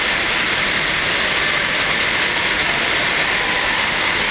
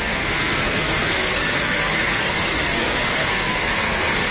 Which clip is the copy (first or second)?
second